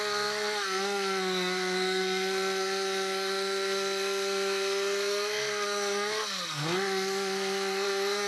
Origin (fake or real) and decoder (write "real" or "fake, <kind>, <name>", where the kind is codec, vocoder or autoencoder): fake, codec, SNAC